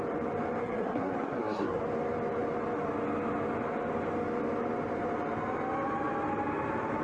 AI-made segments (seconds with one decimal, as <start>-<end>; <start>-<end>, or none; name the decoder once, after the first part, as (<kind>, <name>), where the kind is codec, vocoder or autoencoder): 0.6-1.8 (codec, SNAC)